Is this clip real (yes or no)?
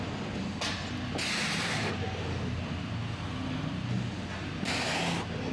yes